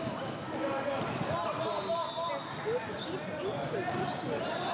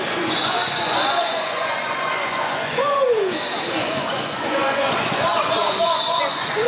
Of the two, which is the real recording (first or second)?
first